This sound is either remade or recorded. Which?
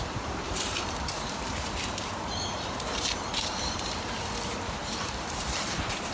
remade